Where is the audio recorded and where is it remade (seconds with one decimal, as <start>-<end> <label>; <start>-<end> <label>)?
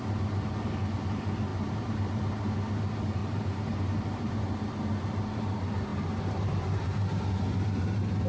0.0-1.5 recorded; 1.5-2.1 remade; 2.1-3.2 recorded; 3.2-4.4 remade; 4.4-5.9 recorded; 5.9-7.3 remade; 7.3-8.3 recorded